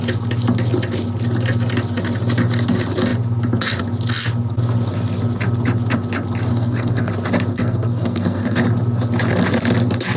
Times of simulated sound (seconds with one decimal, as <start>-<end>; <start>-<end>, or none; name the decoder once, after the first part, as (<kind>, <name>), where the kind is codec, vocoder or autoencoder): 6.5-7.1 (codec, SNAC); 7.5-8.6